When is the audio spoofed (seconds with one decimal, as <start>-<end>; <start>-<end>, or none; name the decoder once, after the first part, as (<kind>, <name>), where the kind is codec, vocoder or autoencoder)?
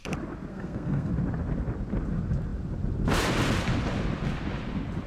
0.5-1.1 (codec, SNAC)